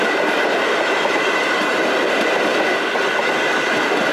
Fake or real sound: real